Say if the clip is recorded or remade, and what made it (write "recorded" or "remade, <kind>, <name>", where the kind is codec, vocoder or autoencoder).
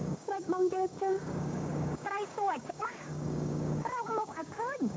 remade, codec, DAC